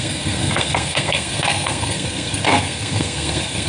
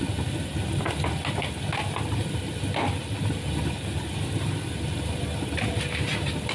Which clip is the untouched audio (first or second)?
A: second